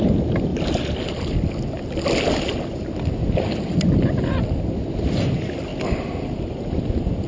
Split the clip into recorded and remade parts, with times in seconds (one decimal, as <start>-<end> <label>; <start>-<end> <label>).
0.0-7.3 recorded